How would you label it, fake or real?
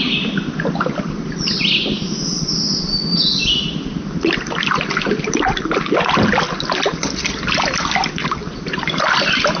real